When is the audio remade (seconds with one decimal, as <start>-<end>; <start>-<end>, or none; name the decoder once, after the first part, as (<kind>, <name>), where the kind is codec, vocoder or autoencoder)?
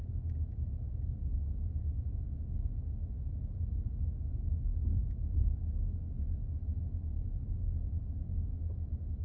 none